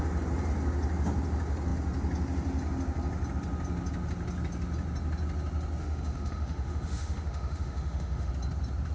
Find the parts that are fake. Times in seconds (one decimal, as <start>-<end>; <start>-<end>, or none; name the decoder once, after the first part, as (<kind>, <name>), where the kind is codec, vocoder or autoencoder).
5.8-8.3 (autoencoder, DAC-VAE)